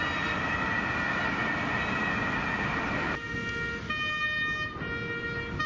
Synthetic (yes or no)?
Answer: no